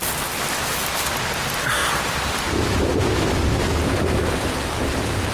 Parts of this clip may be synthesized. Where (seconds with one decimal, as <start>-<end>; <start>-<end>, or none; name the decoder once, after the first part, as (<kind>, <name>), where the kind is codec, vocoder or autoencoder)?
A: 0.8-1.4 (vocoder, BigVGAN v2); 1.8-5.3

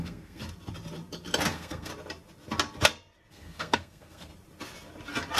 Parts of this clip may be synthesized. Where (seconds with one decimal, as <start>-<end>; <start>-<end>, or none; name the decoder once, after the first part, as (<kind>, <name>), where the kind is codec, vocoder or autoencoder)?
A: 0.0-0.4 (codec, SNAC); 1.5-1.9; 3.3-4.3

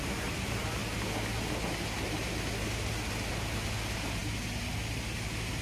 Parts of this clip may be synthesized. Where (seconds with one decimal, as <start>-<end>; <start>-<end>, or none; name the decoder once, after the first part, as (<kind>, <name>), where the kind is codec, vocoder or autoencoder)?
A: none

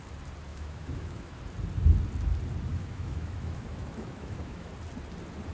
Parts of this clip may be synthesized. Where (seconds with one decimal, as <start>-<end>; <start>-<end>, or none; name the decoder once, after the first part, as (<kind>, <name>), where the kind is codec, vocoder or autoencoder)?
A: 0.5-1.4 (autoencoder, DAC-VAE); 2.7-4.7

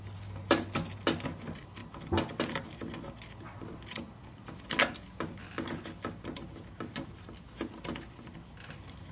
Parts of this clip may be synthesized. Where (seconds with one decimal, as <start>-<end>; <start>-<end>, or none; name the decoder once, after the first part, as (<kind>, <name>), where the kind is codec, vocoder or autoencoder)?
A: none

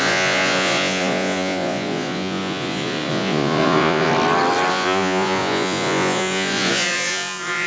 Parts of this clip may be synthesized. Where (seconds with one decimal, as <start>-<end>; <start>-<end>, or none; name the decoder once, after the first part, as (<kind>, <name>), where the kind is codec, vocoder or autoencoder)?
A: 0.0-4.1 (vocoder, Vocos); 4.7-7.7

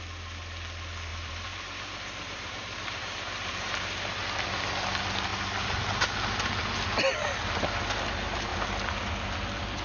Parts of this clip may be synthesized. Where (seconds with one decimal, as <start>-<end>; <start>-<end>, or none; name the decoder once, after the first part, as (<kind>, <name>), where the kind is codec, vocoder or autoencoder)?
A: 1.1-4.2 (vocoder, BigVGAN v2)